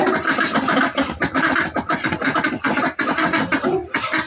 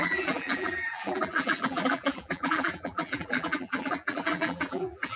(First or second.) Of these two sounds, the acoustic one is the first